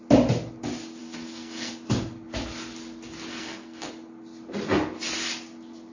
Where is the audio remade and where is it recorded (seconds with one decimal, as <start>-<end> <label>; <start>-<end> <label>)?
0.0-1.0 recorded; 1.0-1.7 remade; 1.7-3.3 recorded; 3.3-3.9 remade; 3.9-5.9 recorded